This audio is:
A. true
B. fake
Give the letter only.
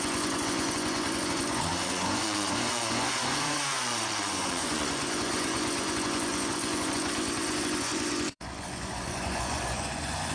B